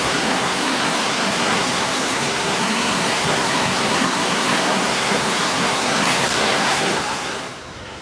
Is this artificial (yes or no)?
yes